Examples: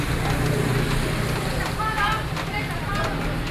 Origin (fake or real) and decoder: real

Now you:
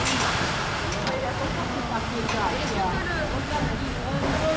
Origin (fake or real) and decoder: real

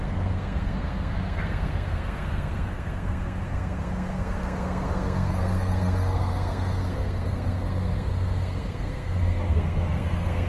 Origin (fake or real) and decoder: fake, codec, SNAC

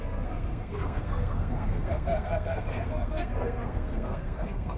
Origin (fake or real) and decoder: fake, codec, SNAC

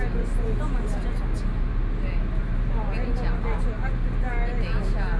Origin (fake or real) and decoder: real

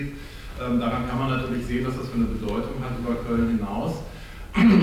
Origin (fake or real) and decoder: real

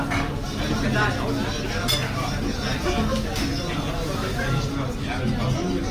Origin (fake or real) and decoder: real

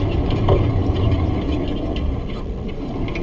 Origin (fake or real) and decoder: real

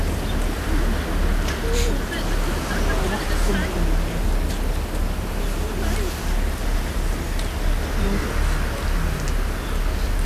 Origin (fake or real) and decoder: real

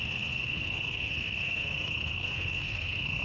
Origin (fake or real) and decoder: fake, codec, SNAC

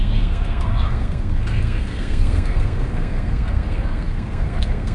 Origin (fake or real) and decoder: fake, codec, SNAC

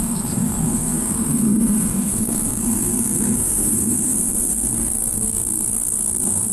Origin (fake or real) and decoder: fake, codec, SNAC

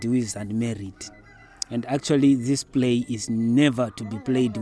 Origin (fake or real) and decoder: real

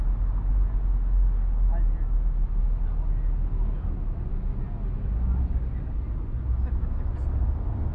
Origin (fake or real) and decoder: real